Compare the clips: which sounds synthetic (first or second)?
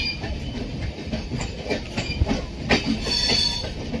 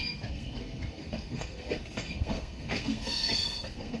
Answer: second